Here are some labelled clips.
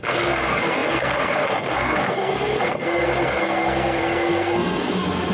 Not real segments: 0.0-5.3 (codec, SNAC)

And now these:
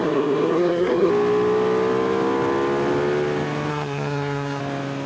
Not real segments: 0.0-1.1 (codec, SNAC); 3.7-4.6

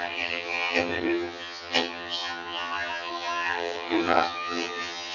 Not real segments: 0.0-5.1 (vocoder, HiFi-GAN)

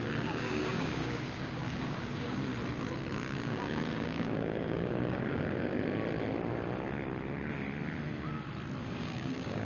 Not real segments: 0.0-2.5 (codec, DAC); 3.1-5.7; 8.8-9.6

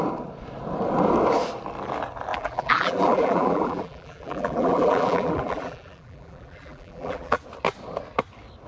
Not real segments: 2.3-7.4 (vocoder, BigVGAN v2)

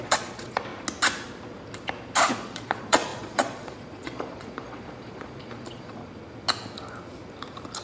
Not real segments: 0.0-0.7 (vocoder, Vocos); 2.3-6.0

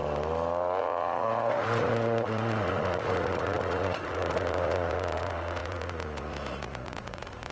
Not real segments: 0.8-7.5 (vocoder, Vocos)

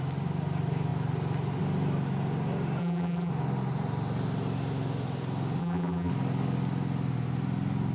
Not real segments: 2.8-3.3 (vocoder, BigVGAN v2); 5.6-6.1